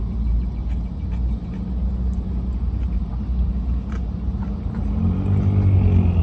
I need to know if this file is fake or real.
real